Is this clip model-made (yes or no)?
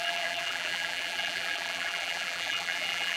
yes